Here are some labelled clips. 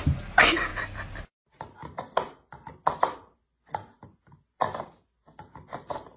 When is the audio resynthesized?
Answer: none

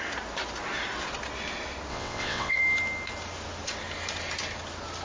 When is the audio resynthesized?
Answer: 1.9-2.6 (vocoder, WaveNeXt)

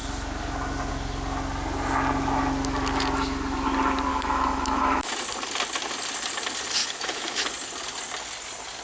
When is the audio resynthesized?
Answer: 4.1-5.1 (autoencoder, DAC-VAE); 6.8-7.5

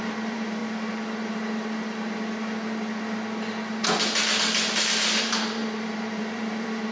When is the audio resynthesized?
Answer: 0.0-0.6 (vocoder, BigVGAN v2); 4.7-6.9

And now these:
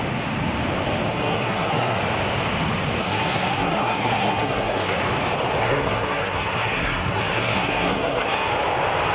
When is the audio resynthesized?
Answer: 1.1-2.0 (codec, SNAC); 3.0-5.0; 5.6-8.5

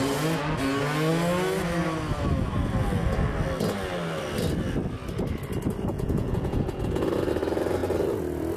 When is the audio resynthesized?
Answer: 5.9-7.1 (vocoder, Vocos)

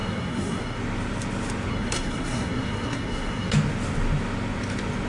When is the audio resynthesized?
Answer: 0.0-0.8 (codec, SNAC); 1.7-3.5

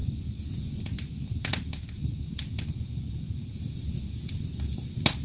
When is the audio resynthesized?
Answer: none